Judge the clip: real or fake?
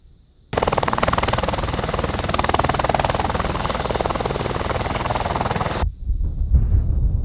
real